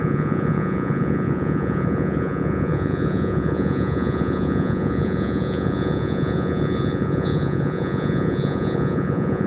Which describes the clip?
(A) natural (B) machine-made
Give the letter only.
B